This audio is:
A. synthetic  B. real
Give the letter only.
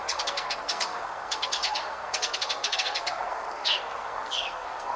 A